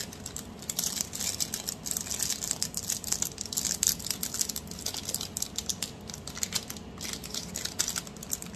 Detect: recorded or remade recorded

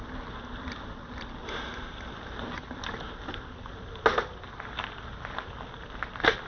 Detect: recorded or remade recorded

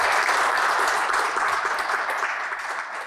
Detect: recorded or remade recorded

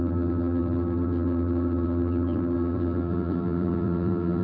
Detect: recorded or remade remade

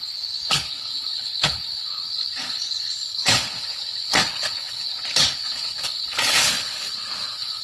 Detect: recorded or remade remade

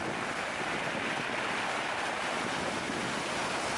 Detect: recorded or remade recorded